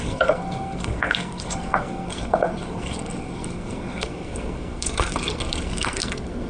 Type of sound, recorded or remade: remade